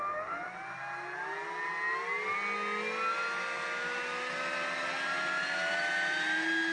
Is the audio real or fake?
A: real